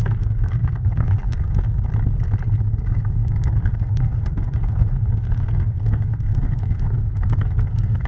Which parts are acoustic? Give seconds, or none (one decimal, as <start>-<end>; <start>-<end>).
1.9-2.6